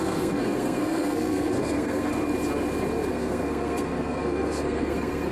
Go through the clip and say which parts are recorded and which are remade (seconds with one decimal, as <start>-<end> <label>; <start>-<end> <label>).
0.0-2.1 remade; 2.1-3.1 recorded; 3.1-5.3 remade